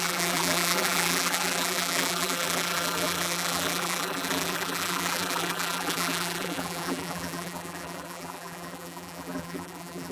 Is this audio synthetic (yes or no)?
yes